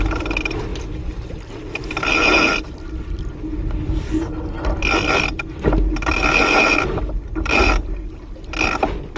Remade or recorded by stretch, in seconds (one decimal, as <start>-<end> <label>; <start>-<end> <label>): 0.0-9.2 recorded